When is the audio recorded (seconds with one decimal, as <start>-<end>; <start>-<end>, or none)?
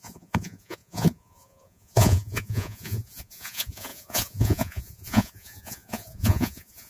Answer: none